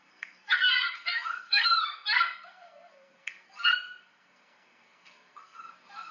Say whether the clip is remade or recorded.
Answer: remade